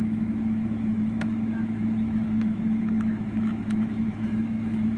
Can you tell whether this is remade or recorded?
remade